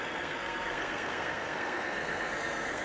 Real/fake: fake